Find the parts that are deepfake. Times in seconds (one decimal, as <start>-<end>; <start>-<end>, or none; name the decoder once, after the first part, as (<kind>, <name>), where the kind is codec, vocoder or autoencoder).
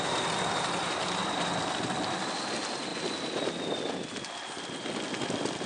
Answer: none